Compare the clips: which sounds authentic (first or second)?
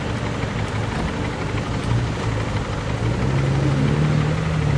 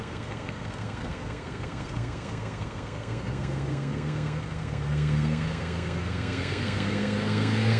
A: first